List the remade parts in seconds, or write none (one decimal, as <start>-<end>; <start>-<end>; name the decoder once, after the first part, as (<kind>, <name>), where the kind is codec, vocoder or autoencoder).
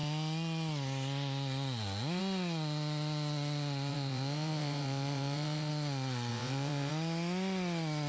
3.9-5.7 (vocoder, WaveNeXt); 6.3-6.9